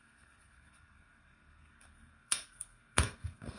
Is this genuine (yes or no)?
no